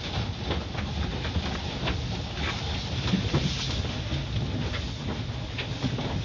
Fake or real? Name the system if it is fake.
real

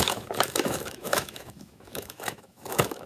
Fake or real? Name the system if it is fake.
fake, autoencoder, DAC-VAE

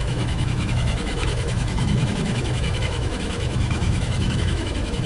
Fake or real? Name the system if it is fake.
fake, autoencoder, DAC-VAE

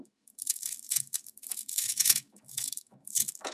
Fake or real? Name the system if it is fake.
fake, autoencoder, DAC-VAE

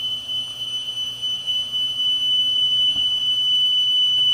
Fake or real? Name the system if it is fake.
real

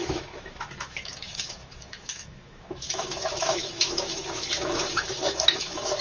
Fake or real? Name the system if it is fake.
fake, autoencoder, DAC-VAE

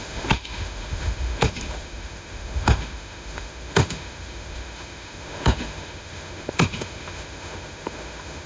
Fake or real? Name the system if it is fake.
fake, autoencoder, DAC-VAE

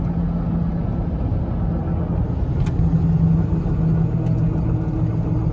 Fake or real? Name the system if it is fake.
real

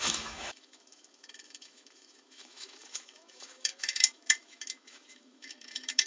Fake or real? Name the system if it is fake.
fake, autoencoder, DAC-VAE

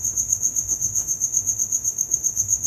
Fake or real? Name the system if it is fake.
fake, autoencoder, DAC-VAE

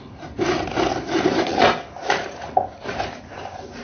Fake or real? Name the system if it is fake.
real